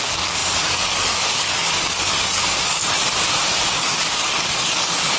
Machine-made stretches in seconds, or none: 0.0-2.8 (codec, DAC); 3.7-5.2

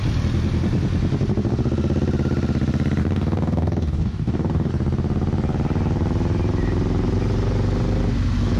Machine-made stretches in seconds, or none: 3.0-4.7 (codec, DAC)

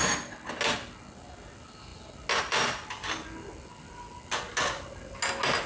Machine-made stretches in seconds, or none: none

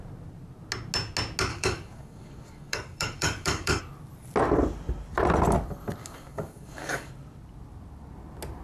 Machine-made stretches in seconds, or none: 1.5-3.8 (codec, DAC); 6.0-7.1